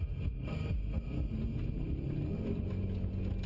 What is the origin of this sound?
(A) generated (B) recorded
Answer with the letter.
B